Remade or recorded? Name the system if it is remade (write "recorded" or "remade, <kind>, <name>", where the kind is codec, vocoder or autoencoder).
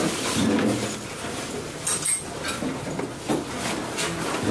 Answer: recorded